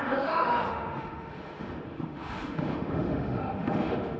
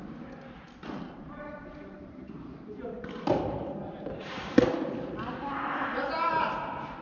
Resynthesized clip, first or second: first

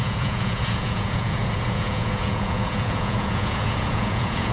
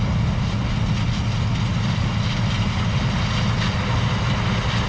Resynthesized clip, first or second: first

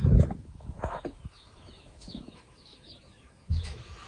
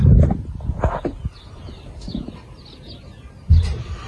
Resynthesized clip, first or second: first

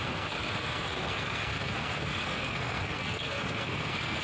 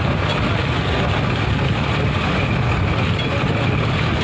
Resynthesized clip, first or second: first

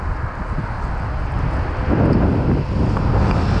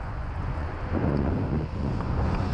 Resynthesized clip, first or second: second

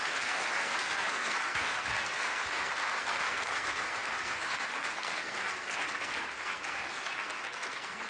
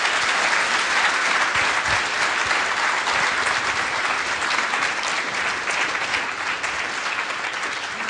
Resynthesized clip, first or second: first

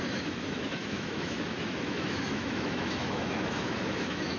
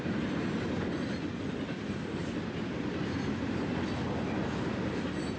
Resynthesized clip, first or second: first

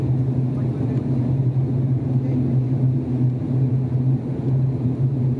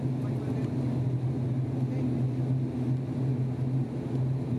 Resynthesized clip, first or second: first